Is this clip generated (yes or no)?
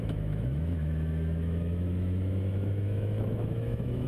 yes